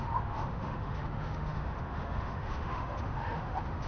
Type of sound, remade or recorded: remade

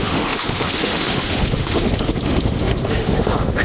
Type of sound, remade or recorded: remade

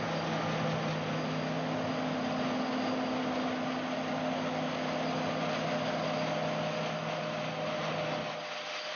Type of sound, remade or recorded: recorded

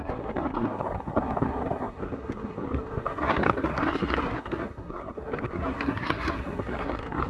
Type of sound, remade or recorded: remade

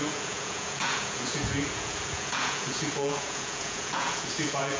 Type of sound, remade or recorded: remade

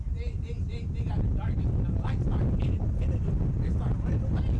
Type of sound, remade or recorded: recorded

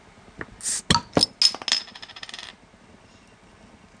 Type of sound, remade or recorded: recorded